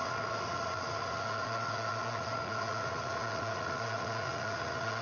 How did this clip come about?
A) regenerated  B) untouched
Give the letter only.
A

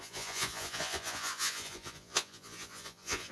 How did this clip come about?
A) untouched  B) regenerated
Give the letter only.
B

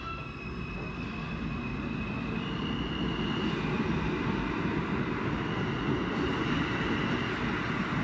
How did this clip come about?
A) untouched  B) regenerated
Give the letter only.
A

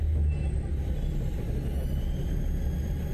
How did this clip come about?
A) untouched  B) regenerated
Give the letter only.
A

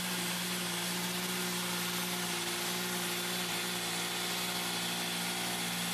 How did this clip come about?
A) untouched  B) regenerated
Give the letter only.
A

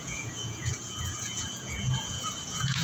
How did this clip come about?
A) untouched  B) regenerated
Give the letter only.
B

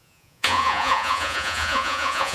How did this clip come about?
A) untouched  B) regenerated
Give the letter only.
B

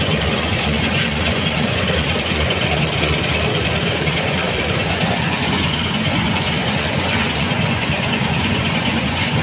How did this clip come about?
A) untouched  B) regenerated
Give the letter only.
B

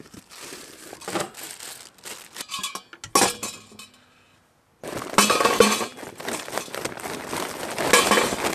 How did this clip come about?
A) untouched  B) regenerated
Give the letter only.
A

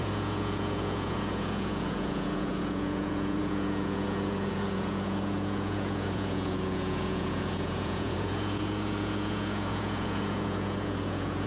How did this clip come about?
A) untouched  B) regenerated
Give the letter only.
B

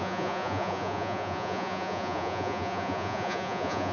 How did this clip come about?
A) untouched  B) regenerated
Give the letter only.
B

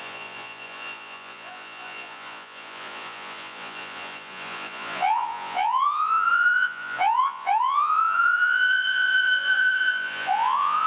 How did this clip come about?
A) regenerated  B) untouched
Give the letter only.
A